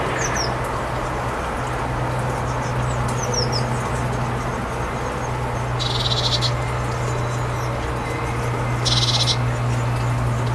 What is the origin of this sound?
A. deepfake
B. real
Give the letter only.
B